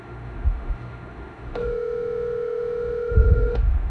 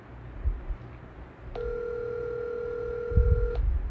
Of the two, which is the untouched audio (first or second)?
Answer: second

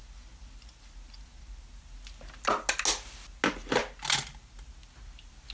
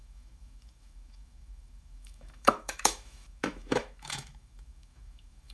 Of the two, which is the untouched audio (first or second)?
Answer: first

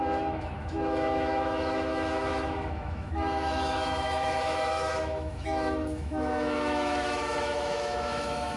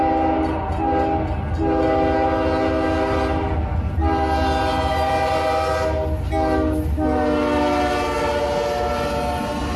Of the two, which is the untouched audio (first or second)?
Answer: second